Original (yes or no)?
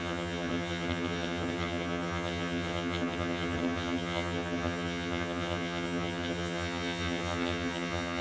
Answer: no